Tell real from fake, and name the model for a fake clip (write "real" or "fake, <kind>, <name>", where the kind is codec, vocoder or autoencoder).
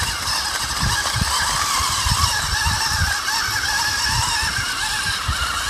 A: real